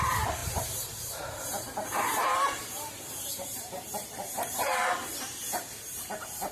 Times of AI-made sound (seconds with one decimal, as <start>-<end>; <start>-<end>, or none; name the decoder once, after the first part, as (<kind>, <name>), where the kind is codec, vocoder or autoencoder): 0.0-6.5 (vocoder, BigVGAN v2)